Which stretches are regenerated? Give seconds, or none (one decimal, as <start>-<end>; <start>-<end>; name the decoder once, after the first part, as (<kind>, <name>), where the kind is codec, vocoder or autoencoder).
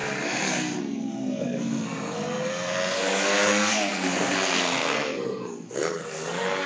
0.0-6.7 (codec, SNAC)